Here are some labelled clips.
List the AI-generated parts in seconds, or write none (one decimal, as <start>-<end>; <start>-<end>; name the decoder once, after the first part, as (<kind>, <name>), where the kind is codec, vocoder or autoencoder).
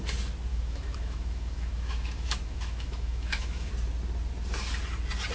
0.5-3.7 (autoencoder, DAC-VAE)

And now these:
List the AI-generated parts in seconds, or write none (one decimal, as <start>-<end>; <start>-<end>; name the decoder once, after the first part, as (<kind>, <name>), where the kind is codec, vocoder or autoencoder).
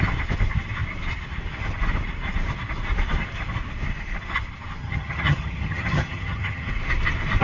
4.8-6.7 (vocoder, HiFi-GAN)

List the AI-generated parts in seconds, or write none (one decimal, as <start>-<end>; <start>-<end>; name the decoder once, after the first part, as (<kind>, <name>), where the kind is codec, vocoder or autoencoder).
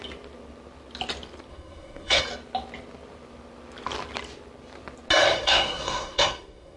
1.5-2.2 (codec, SNAC); 5.2-6.8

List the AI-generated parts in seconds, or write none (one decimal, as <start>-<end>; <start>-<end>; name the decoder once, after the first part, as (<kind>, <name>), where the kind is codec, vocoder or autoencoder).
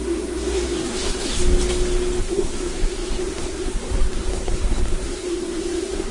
0.0-1.4 (codec, SNAC); 2.2-6.1